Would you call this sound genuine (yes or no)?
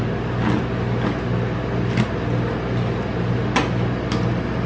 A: yes